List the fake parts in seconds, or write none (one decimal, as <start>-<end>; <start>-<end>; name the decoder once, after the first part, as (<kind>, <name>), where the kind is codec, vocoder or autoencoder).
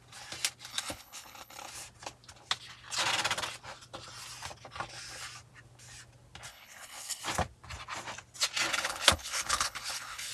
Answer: 0.7-1.7 (codec, HILCodec); 6.5-7.2; 8.7-10.3